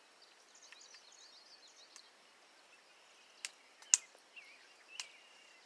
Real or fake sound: real